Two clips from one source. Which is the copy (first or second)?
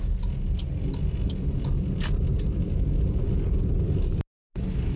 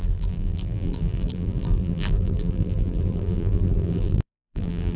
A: second